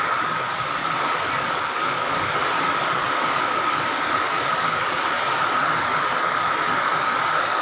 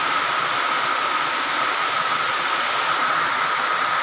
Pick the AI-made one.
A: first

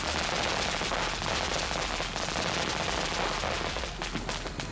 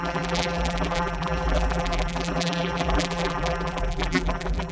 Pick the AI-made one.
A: second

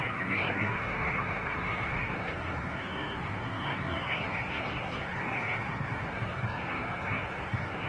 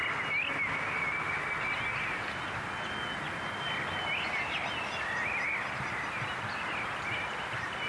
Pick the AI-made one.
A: first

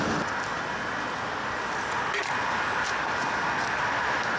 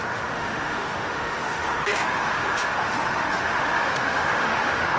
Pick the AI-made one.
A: second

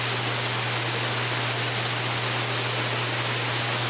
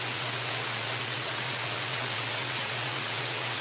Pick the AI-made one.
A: second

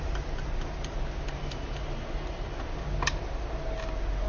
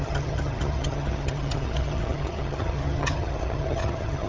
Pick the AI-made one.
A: second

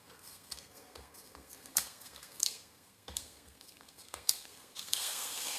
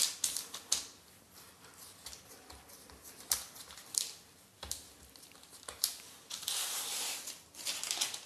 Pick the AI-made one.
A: first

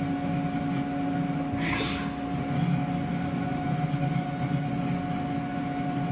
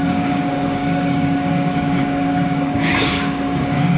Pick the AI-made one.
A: second